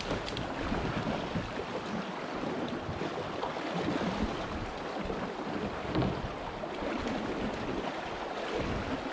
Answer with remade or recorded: recorded